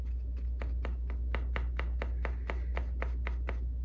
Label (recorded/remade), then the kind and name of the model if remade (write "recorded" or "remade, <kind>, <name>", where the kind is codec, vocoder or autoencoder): recorded